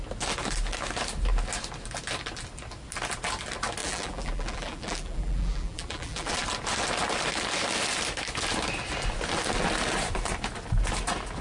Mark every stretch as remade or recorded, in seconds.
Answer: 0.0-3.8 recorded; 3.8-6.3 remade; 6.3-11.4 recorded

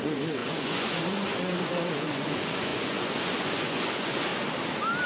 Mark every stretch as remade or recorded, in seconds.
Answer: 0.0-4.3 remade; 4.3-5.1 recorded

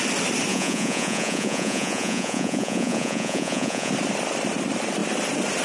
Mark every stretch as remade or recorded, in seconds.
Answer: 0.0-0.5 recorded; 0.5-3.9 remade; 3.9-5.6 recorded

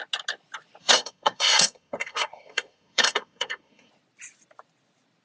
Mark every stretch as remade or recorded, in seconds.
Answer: 0.0-0.8 recorded; 0.8-3.9 remade; 3.9-5.2 recorded

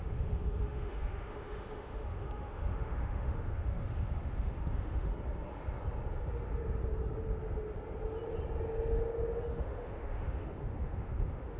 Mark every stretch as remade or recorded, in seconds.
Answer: 0.0-5.1 remade; 5.1-9.5 recorded; 9.5-11.6 remade

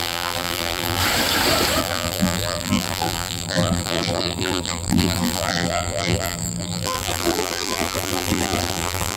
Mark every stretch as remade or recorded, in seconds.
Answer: 0.0-1.0 remade; 1.0-1.8 recorded; 1.8-9.2 remade

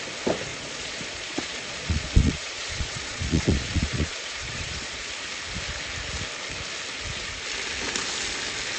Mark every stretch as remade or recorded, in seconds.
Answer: 0.0-0.5 recorded; 0.5-5.1 remade; 5.1-8.8 recorded